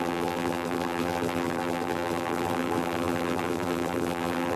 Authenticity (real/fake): fake